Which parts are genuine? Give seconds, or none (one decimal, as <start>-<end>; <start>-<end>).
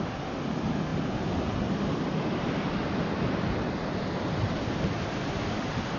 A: 0.0-6.0